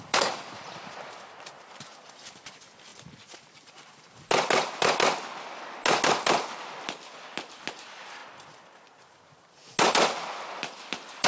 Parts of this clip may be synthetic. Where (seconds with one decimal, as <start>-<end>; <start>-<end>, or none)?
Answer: 0.0-2.9; 7.7-8.2; 9.9-11.3